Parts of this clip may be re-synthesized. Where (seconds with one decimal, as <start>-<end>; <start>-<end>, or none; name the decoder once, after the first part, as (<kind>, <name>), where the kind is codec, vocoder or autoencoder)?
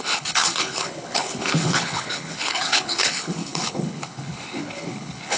0.0-5.4 (codec, HILCodec)